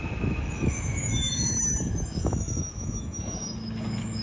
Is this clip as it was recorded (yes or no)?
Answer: no